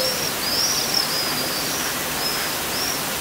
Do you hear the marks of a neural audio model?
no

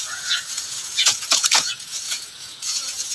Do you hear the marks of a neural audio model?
yes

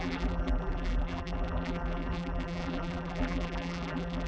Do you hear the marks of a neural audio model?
yes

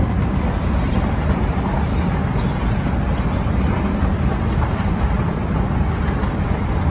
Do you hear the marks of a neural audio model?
no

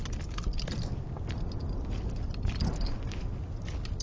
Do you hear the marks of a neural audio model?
no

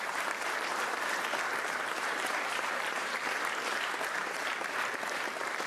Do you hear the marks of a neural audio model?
yes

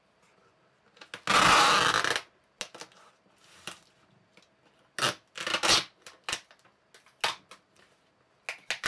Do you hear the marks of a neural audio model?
no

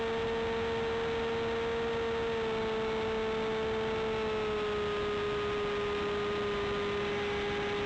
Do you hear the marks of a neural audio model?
no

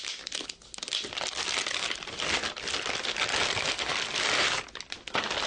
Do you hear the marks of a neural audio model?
no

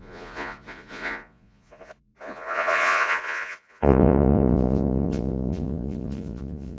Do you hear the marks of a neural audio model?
yes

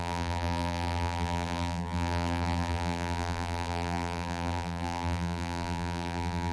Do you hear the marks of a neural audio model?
yes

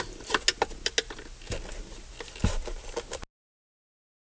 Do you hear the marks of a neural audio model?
no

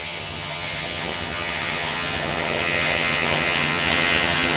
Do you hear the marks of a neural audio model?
yes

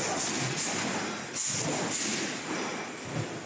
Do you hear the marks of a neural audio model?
no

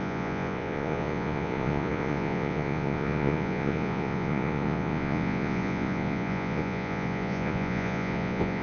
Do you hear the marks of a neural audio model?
yes